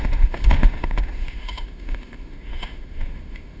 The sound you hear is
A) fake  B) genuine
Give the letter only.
A